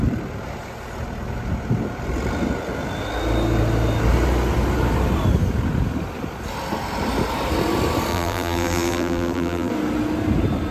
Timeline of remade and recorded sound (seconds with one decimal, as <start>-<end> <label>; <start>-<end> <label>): 0.0-8.1 recorded; 8.1-9.7 remade; 9.7-10.7 recorded